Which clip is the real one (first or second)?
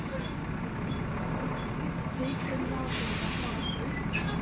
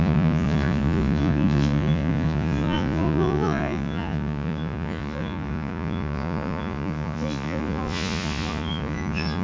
first